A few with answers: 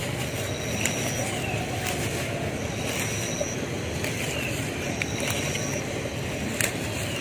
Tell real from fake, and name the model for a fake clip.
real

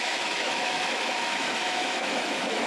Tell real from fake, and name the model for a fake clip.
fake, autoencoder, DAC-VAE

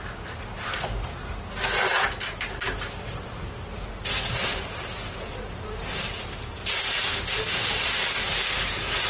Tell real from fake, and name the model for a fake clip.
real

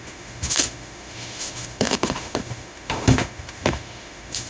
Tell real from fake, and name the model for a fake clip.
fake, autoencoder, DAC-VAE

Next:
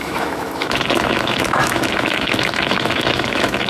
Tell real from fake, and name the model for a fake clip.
fake, autoencoder, DAC-VAE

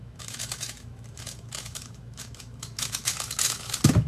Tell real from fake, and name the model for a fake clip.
fake, autoencoder, DAC-VAE